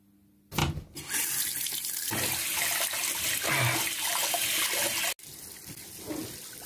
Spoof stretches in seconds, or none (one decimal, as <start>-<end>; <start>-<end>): none